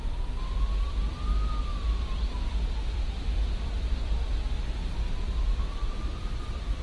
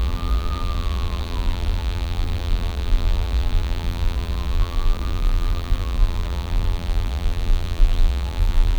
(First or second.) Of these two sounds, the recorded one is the first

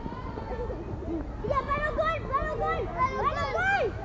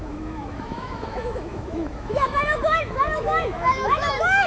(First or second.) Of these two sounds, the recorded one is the first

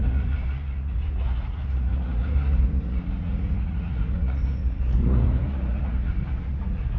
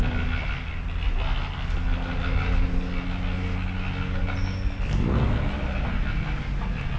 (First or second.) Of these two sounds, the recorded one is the second